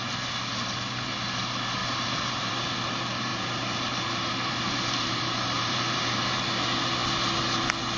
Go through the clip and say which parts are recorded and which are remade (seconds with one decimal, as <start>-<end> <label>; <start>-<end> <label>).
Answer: 0.0-1.8 recorded; 1.8-2.5 remade; 2.5-3.3 recorded; 3.3-6.0 remade; 6.0-8.0 recorded

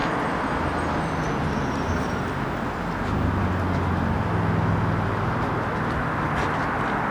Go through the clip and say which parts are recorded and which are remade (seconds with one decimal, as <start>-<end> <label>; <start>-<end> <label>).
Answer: 0.0-7.1 recorded

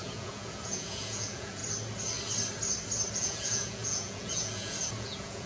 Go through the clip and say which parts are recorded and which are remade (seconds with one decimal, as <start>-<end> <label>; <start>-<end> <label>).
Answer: 0.0-1.6 remade; 1.6-3.1 recorded; 3.1-5.5 remade

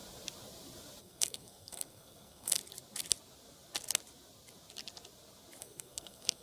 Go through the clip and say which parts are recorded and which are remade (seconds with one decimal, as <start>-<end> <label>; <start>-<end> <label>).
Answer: 0.0-1.0 recorded; 1.0-2.6 remade; 2.6-5.6 recorded; 5.6-6.4 remade

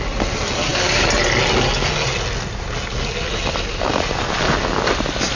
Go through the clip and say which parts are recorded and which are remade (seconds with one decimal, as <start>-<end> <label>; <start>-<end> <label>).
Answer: 0.0-5.4 recorded

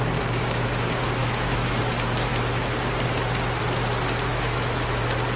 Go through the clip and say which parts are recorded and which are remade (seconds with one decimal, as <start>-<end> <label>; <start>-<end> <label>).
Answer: 0.0-1.2 recorded; 1.2-1.8 remade; 1.8-4.3 recorded; 4.3-5.0 remade; 5.0-5.4 recorded

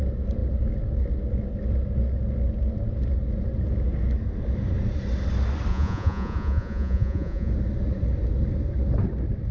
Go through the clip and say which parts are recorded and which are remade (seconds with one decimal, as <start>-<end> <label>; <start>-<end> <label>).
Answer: 0.0-5.7 recorded; 5.7-7.5 remade; 7.5-9.5 recorded

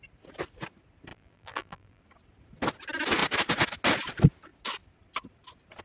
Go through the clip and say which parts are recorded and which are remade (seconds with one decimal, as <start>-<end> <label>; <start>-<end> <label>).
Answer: 0.0-1.1 recorded; 1.1-2.0 remade; 2.0-5.8 recorded